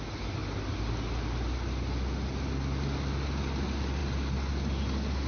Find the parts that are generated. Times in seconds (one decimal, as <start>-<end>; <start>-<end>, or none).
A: none